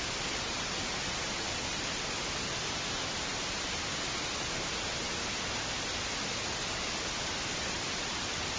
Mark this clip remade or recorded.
recorded